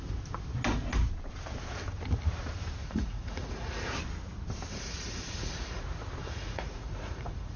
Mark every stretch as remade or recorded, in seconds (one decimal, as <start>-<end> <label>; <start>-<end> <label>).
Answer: 0.0-2.8 recorded; 2.8-3.9 remade; 3.9-4.7 recorded; 4.7-5.8 remade; 5.8-6.2 recorded; 6.2-7.6 remade